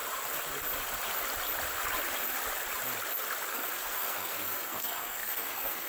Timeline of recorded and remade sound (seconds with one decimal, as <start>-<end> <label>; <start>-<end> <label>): 0.0-3.5 recorded; 3.5-5.9 remade

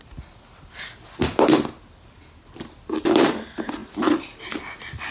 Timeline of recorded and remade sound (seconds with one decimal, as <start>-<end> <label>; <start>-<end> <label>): 0.0-5.1 recorded

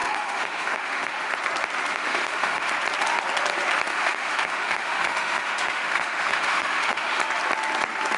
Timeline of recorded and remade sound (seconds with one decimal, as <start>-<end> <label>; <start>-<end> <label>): 0.0-1.3 remade; 1.3-1.9 recorded; 1.9-2.7 remade; 2.7-3.9 recorded; 3.9-7.2 remade; 7.2-8.2 recorded

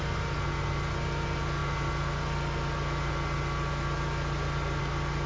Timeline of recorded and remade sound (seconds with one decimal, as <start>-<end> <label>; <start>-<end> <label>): 0.0-5.3 recorded

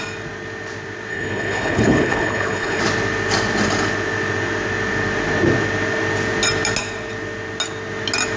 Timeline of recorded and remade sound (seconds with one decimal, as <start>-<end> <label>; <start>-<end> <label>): 0.0-1.1 recorded; 1.1-2.8 remade; 2.8-8.4 recorded